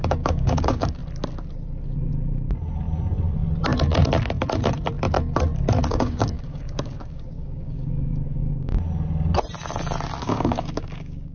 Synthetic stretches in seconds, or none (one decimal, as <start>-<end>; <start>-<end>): 0.0-1.0; 5.9-8.7; 10.2-11.3